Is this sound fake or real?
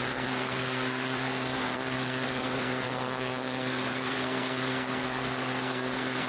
fake